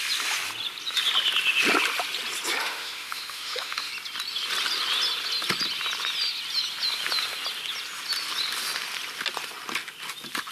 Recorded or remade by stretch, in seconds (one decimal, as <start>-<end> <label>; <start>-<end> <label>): 0.0-2.6 recorded; 2.6-3.9 remade; 3.9-10.5 recorded